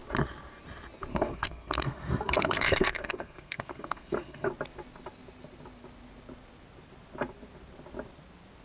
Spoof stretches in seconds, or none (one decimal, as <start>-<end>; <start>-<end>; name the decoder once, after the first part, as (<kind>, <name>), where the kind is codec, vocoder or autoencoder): 1.1-4.5 (codec, SNAC)